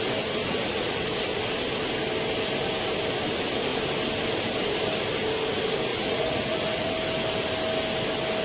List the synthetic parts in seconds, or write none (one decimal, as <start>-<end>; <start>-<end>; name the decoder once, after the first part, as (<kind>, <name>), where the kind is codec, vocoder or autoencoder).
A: 0.4-1.0 (vocoder, Vocos); 5.9-6.9